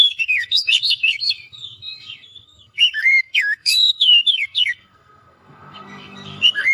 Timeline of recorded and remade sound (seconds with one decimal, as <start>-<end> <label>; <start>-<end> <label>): 0.0-6.7 remade